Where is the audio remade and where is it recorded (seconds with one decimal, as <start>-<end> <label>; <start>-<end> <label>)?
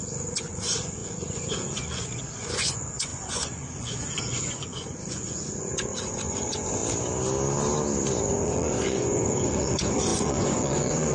0.0-6.8 remade; 6.8-8.3 recorded; 8.3-11.1 remade